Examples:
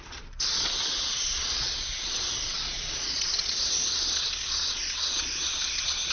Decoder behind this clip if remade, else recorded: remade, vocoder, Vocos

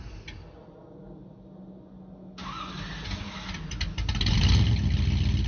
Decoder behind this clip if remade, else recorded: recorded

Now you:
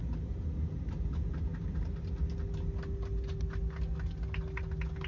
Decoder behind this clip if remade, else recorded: recorded